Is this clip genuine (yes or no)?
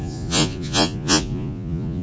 no